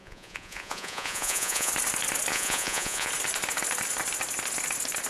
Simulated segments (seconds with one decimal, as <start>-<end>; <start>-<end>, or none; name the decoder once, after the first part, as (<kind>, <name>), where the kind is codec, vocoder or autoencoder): 0.0-1.7 (vocoder, Vocos); 2.3-3.1